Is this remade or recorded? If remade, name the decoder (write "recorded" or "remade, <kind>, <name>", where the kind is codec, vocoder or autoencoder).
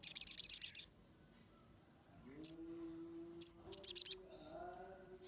recorded